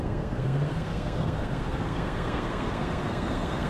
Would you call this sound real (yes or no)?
no